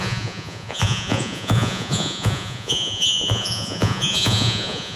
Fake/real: fake